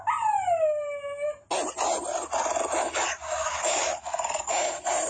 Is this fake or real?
real